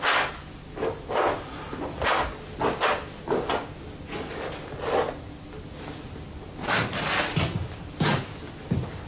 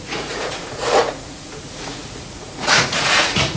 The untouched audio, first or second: first